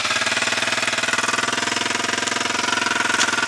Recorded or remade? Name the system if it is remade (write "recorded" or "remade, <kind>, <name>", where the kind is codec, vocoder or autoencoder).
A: recorded